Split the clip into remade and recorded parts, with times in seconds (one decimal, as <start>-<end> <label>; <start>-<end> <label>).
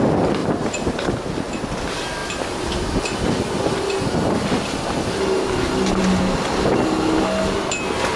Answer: 0.0-0.4 recorded; 0.4-1.6 remade; 1.6-8.2 recorded